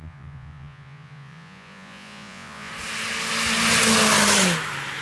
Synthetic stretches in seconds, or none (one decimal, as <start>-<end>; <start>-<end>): 0.0-2.7

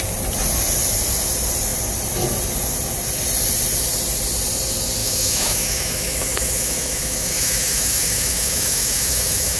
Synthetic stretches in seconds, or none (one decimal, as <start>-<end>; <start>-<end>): 5.0-9.6